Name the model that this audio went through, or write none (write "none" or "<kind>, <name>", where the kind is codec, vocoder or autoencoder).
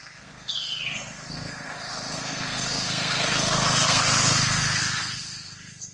codec, SNAC